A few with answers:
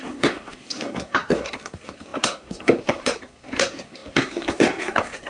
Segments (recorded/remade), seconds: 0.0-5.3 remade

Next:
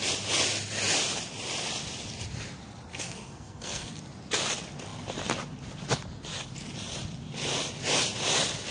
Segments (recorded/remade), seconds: 0.0-2.9 recorded; 2.9-4.0 remade; 4.0-8.7 recorded

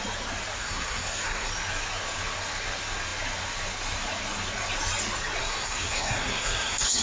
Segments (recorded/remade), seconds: 0.0-0.6 recorded; 0.6-1.5 remade; 1.5-5.4 recorded; 5.4-7.0 remade

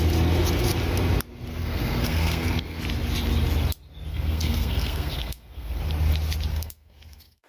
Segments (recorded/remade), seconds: 0.0-1.5 recorded; 1.5-2.8 remade; 2.8-4.1 recorded; 4.1-5.8 remade; 5.8-6.5 recorded; 6.5-7.5 remade

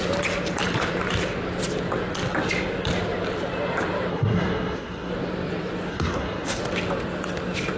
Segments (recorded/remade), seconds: 0.0-4.1 recorded; 4.1-5.1 remade; 5.1-5.9 recorded; 5.9-6.6 remade; 6.6-7.8 recorded

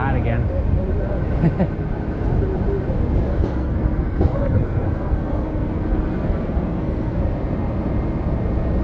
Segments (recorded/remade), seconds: 0.0-3.3 recorded; 3.3-7.2 remade; 7.2-8.8 recorded

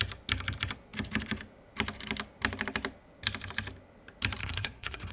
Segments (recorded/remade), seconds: 0.0-4.4 recorded; 4.4-5.1 remade